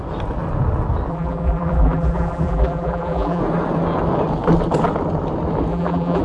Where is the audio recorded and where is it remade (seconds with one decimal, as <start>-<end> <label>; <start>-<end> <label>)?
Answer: 0.0-1.1 recorded; 1.1-3.4 remade; 3.4-5.7 recorded; 5.7-6.2 remade